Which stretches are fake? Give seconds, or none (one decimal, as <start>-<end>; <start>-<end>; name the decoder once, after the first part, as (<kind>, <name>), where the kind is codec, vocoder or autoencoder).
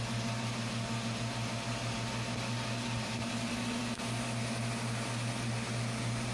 none